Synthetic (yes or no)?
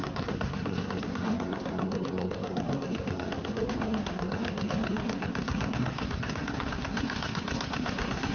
yes